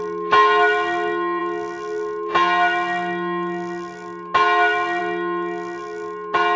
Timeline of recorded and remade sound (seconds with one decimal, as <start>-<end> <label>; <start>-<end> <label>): 0.0-6.6 recorded